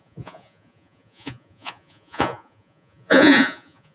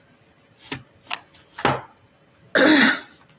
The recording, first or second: second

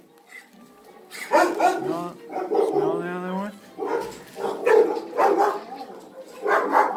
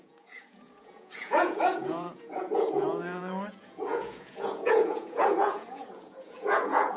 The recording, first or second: first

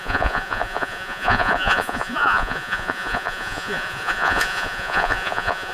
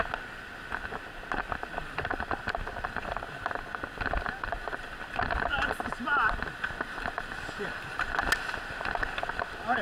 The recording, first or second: second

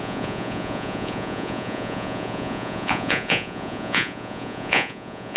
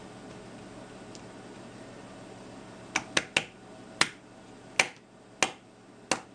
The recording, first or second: second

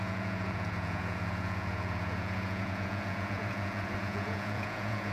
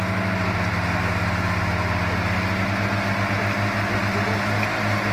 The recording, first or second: second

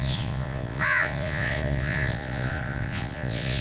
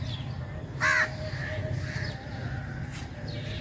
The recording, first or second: second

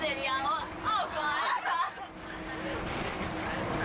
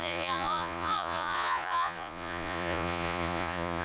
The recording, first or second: first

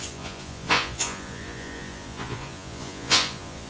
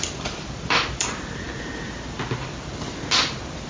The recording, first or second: second